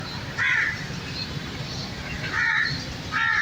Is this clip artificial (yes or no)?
no